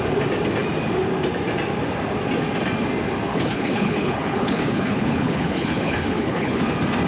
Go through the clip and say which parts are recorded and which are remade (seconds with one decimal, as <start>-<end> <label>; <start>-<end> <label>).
0.0-3.3 recorded; 3.3-6.6 remade; 6.6-7.1 recorded